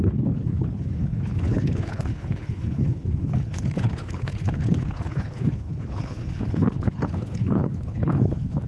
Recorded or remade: remade